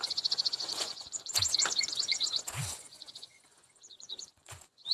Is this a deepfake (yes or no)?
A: yes